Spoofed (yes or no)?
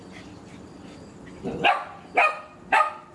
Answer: no